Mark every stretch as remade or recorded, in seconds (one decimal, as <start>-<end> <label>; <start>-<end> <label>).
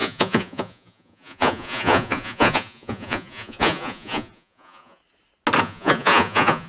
0.0-5.0 remade; 5.0-5.6 recorded; 5.6-6.7 remade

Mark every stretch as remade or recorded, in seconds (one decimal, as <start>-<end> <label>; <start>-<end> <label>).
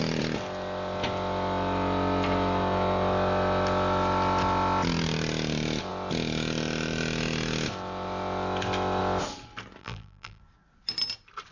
0.0-9.8 recorded; 9.8-10.4 remade; 10.4-11.5 recorded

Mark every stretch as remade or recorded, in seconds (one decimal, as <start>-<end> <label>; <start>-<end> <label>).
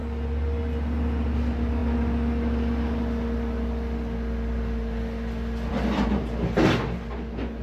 0.0-7.6 recorded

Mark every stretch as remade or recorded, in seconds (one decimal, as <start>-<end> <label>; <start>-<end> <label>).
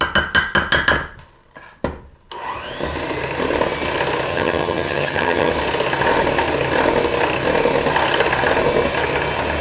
0.0-4.3 recorded; 4.3-5.5 remade; 5.5-9.6 recorded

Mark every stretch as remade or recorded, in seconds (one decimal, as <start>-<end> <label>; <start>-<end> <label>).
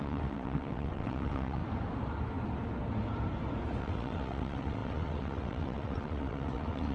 0.0-1.6 remade; 1.6-3.8 recorded; 3.8-6.9 remade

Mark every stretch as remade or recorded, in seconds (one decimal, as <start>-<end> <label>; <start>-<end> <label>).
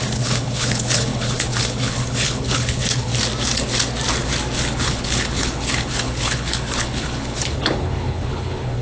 0.0-3.1 remade; 3.1-4.6 recorded; 4.6-8.8 remade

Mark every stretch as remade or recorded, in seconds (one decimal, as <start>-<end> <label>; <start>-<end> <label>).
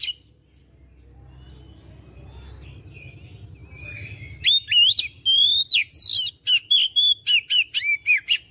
0.0-8.5 recorded